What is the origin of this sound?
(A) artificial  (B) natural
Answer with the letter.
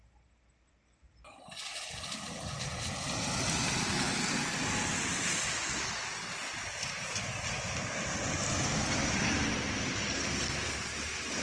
B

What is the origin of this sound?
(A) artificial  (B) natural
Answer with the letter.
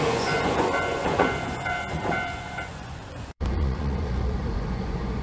A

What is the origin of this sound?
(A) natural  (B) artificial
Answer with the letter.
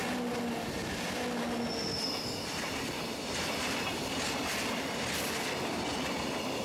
A